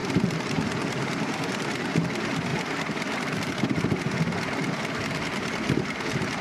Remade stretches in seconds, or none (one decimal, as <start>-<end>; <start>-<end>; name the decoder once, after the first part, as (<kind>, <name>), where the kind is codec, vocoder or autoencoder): 0.0-2.0 (vocoder, BigVGAN v2); 2.5-3.5